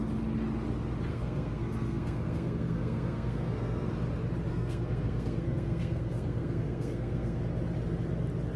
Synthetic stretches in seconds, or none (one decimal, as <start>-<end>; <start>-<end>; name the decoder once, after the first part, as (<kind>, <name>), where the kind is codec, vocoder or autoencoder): 1.1-3.9 (codec, SNAC); 4.5-7.4